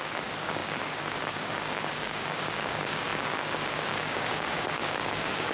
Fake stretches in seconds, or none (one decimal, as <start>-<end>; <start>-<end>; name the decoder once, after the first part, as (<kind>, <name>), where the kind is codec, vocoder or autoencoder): 0.0-5.5 (codec, DAC)